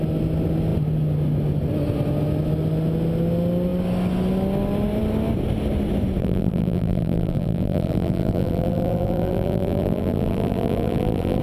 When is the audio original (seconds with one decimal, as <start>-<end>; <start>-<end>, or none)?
0.0-6.2